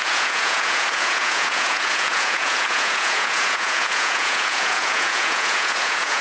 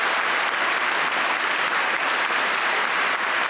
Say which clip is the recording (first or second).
second